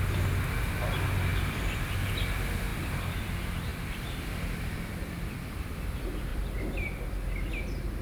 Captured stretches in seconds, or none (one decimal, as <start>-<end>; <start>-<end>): 0.0-1.3; 2.1-2.7; 3.3-6.3; 7.6-8.0